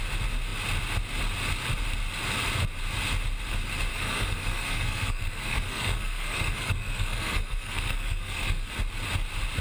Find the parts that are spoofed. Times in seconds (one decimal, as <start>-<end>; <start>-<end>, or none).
3.9-8.7